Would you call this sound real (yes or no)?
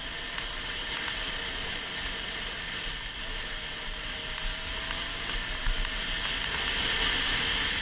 yes